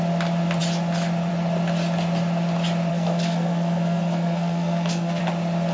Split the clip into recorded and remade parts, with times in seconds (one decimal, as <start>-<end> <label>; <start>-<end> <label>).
0.0-2.9 recorded; 2.9-5.2 remade; 5.2-5.7 recorded